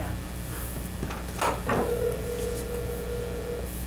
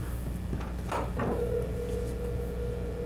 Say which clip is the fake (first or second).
second